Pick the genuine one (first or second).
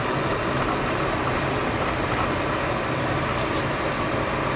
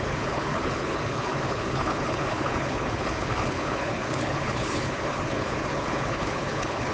first